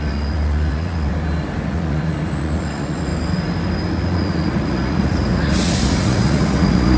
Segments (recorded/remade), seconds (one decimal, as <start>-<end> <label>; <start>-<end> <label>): 0.0-1.1 remade; 1.1-1.6 recorded; 1.6-3.1 remade; 3.1-3.9 recorded; 3.9-7.0 remade